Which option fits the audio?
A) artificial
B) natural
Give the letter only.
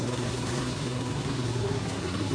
A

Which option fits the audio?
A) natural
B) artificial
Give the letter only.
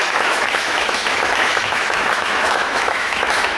B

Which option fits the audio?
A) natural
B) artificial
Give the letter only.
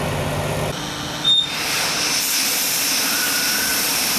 A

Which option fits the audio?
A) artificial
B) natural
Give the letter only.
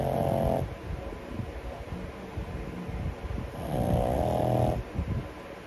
B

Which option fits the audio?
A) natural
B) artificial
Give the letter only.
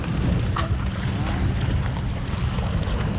A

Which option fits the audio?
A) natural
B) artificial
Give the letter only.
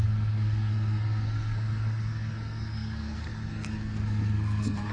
B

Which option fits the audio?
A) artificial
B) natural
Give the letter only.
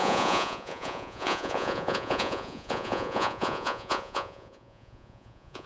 A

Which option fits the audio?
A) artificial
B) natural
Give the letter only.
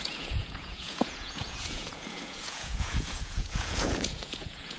A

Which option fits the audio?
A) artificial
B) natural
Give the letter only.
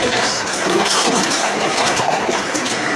A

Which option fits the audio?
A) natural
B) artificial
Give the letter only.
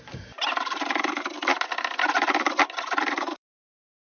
B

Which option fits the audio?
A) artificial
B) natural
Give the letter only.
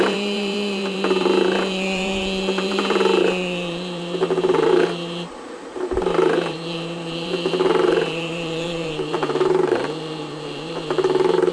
A